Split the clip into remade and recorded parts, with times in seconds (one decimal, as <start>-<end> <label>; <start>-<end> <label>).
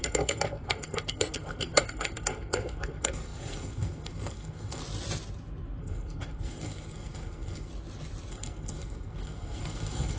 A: 0.0-4.8 remade; 4.8-5.8 recorded; 5.8-7.7 remade; 7.7-8.3 recorded; 8.3-10.2 remade